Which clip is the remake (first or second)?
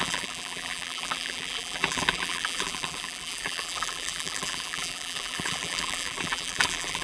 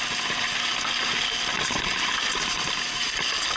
first